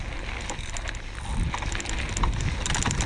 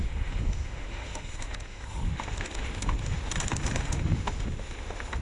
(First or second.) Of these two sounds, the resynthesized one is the second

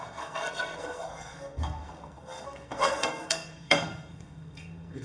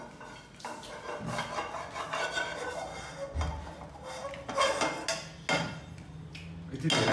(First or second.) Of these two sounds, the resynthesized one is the first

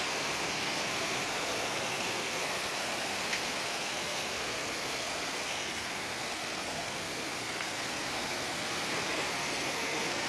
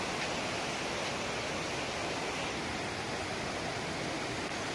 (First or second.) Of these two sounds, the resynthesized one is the first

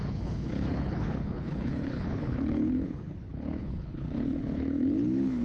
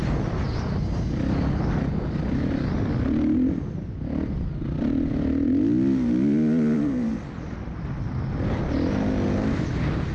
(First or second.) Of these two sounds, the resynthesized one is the first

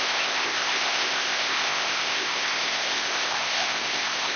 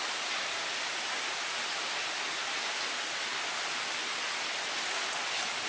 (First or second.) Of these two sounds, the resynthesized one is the first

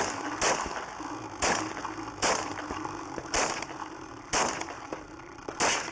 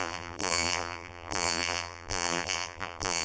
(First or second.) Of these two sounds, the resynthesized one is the second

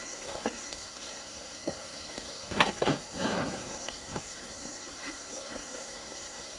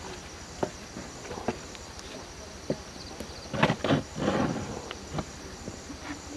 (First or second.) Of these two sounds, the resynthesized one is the first